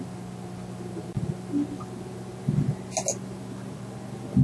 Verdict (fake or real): real